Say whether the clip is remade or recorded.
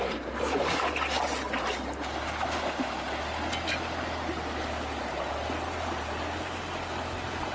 recorded